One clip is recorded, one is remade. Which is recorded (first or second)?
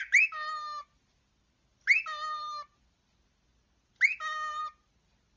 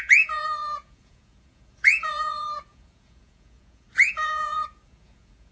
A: first